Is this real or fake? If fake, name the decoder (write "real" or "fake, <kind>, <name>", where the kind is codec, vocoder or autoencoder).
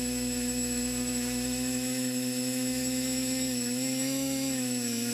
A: fake, autoencoder, DAC-VAE